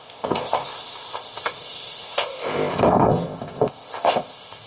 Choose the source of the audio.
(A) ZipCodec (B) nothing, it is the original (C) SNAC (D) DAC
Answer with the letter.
A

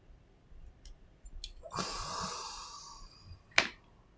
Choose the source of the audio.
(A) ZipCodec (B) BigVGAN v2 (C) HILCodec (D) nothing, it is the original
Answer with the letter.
D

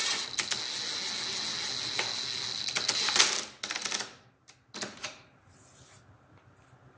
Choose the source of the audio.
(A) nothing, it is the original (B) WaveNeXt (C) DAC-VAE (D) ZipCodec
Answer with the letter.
A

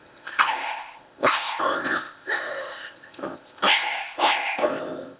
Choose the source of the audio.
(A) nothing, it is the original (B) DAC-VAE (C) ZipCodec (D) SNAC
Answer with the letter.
C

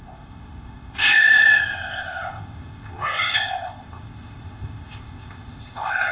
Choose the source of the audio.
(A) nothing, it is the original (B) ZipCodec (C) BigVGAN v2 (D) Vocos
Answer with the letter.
B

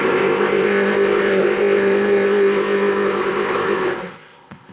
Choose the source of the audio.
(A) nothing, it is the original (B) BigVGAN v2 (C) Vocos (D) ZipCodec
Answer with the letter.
D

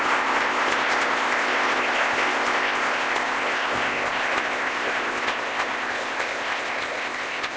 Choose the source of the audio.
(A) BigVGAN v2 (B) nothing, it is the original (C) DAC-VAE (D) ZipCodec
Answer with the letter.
D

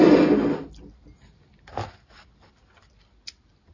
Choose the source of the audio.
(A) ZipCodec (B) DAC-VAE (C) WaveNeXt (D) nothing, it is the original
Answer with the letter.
D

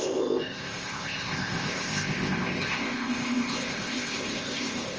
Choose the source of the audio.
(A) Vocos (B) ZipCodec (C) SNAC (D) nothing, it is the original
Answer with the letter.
B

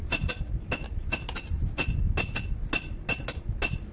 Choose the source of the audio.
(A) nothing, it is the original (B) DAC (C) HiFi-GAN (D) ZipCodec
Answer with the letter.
A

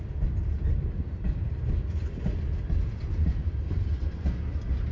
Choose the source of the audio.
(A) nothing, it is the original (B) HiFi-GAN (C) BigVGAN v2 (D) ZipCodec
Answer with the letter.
A